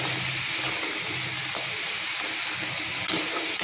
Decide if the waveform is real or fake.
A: real